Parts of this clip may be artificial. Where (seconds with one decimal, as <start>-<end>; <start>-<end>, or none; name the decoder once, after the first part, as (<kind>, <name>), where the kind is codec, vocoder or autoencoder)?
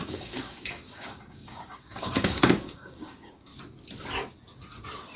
0.0-3.5 (codec, DAC)